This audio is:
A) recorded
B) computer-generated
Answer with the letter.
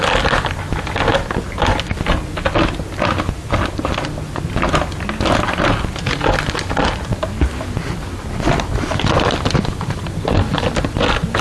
A